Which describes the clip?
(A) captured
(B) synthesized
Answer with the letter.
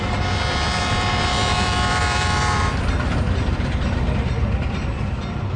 B